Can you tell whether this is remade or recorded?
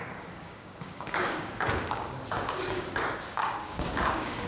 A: remade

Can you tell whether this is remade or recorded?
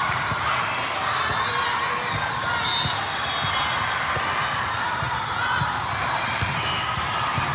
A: recorded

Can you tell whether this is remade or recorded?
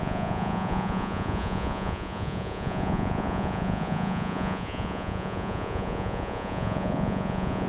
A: remade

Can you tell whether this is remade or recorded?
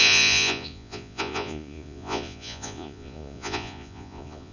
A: remade